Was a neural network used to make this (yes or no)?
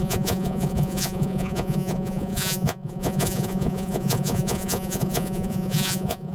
yes